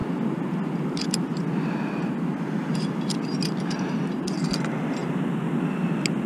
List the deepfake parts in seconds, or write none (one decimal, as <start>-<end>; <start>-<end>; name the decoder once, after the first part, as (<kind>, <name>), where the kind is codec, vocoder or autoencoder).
none